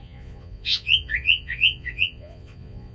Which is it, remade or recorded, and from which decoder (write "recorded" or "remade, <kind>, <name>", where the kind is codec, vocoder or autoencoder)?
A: remade, vocoder, Vocos